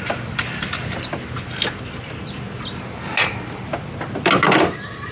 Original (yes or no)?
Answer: yes